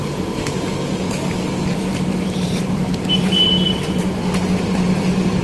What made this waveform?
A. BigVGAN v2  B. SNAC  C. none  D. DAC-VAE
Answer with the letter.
A